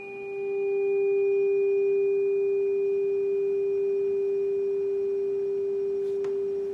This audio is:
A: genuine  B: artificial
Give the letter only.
A